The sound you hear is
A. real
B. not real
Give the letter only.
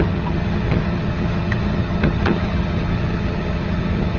B